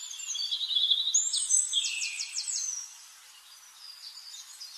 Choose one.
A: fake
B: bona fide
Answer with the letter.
B